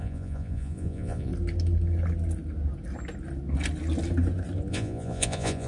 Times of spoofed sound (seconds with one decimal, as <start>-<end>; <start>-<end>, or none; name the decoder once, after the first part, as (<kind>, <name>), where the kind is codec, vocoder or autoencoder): 0.0-1.3 (vocoder, Vocos); 4.7-5.7